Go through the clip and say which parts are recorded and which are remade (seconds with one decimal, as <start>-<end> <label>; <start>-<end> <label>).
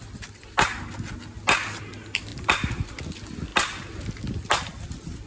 0.0-2.3 recorded; 2.3-2.9 remade; 2.9-5.3 recorded